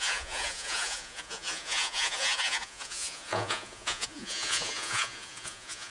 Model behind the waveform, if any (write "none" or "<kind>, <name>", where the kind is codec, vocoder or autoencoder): vocoder, Vocos